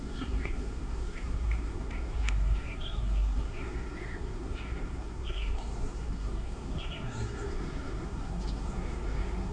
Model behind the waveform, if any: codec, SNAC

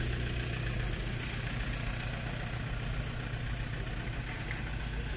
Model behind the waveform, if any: none